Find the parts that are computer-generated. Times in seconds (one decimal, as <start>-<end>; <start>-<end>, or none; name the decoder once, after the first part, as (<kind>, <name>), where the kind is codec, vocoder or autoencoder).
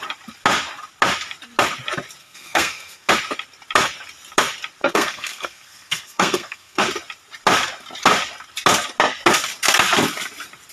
2.2-3.1 (codec, SNAC); 4.8-6.8